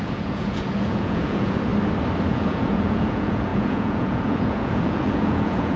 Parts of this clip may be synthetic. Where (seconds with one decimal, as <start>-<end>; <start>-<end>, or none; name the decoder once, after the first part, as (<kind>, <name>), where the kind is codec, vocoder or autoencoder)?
0.0-1.7 (vocoder, Vocos); 2.3-5.8